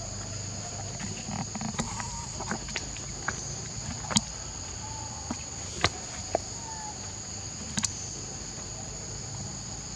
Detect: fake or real real